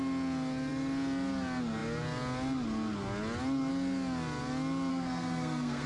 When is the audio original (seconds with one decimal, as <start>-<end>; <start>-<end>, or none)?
0.0-4.9